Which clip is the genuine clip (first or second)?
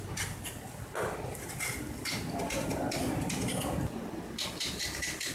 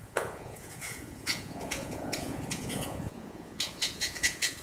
first